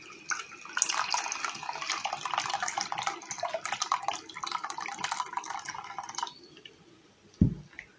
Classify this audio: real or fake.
real